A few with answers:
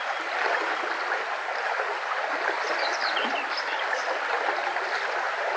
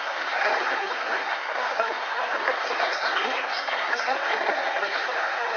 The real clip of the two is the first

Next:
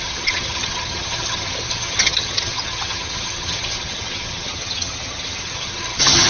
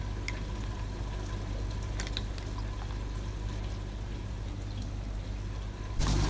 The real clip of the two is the second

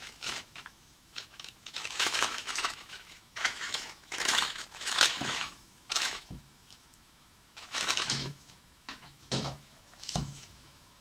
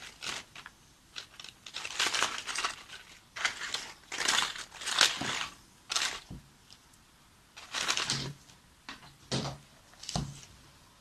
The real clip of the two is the second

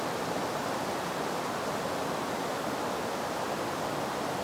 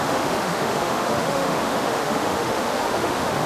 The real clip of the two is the first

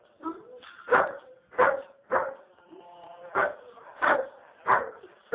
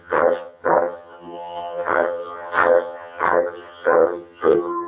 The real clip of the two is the first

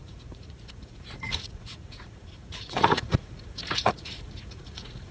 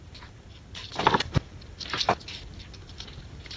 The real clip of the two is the second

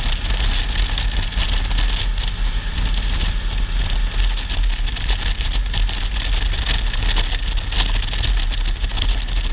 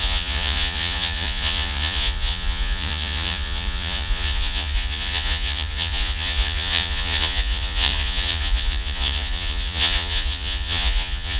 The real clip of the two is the first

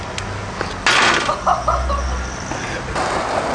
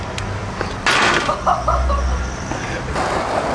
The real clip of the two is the first